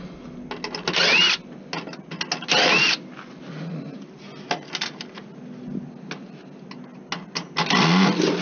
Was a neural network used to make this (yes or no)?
no